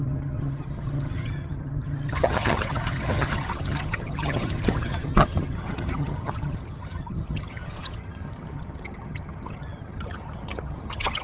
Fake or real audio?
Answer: fake